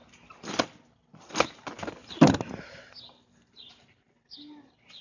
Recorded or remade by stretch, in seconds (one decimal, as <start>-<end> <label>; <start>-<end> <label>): 0.0-2.0 recorded; 2.0-5.0 remade